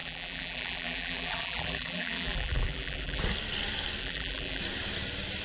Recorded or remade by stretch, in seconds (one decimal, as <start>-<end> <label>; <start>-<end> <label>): 0.0-3.2 remade; 3.2-4.0 recorded; 4.0-4.6 remade; 4.6-5.4 recorded